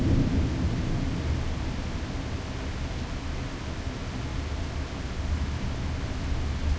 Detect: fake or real real